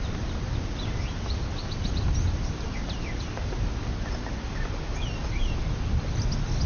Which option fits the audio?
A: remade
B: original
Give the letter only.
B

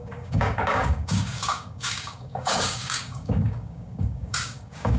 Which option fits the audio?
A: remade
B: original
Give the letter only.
A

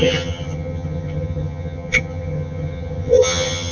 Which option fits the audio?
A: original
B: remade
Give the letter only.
B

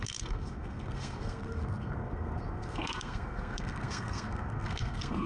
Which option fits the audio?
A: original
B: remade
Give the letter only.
B